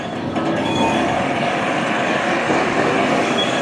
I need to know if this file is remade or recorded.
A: remade